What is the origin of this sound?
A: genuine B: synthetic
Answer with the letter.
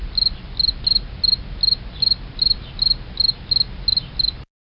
A